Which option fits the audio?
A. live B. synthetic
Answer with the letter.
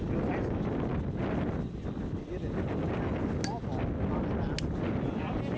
A